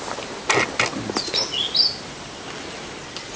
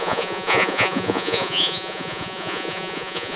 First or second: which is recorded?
first